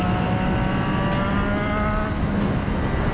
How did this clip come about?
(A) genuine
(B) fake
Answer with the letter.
A